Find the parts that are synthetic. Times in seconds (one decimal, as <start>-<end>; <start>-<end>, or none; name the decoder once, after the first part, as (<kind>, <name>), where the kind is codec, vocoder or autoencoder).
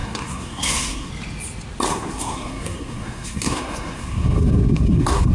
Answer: 0.0-1.1 (codec, SNAC); 1.9-5.3